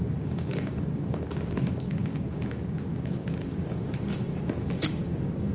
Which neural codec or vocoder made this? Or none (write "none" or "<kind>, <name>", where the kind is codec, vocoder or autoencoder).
codec, DAC